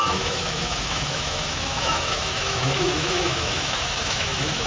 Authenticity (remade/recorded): remade